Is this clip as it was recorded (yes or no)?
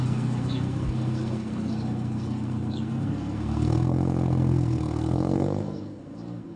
no